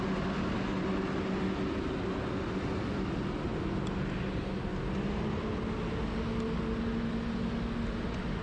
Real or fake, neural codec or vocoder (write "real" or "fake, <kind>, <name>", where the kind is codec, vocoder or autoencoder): real